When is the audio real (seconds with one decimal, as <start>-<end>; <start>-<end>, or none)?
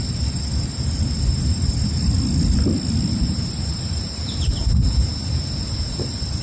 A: 2.0-3.1